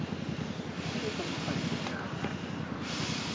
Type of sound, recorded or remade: recorded